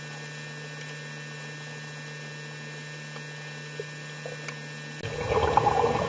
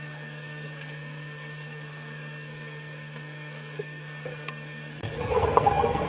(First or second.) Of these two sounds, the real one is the first